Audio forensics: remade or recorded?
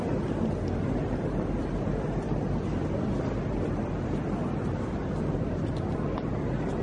recorded